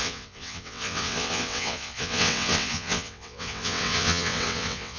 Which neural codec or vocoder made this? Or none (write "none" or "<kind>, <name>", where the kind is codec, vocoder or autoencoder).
vocoder, WaveNeXt